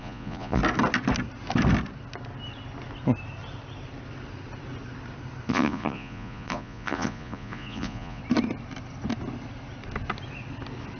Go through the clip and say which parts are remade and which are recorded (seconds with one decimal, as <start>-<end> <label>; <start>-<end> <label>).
0.0-0.6 remade; 0.6-5.5 recorded; 5.5-8.2 remade; 8.2-11.0 recorded

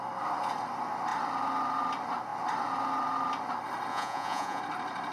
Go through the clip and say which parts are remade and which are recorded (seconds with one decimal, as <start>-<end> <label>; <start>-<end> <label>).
0.0-3.9 recorded; 3.9-4.6 remade; 4.6-5.1 recorded

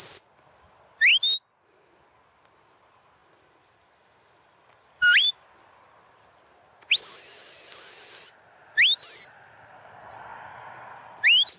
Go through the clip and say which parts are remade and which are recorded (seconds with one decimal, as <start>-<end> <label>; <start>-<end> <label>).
0.0-3.2 recorded; 3.2-5.5 remade; 5.5-10.3 recorded; 10.3-11.2 remade; 11.2-11.6 recorded